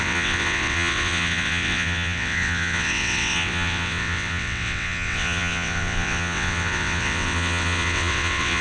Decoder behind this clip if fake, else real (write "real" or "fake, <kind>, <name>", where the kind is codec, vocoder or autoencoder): fake, vocoder, WaveNeXt